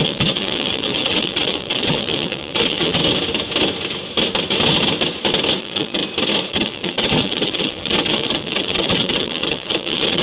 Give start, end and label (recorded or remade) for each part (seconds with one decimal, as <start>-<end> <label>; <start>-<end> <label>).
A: 0.0-3.0 remade; 3.0-5.6 recorded; 5.6-6.0 remade; 6.0-6.5 recorded; 6.5-10.2 remade